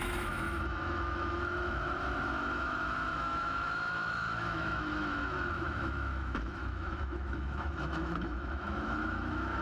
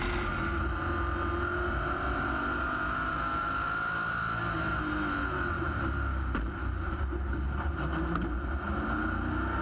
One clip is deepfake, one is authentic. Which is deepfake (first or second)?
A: first